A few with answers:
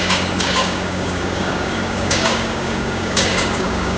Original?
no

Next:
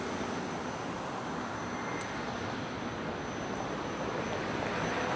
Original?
yes